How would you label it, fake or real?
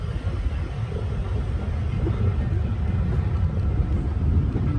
real